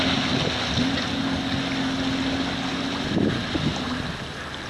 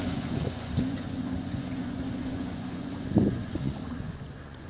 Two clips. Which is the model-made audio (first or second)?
second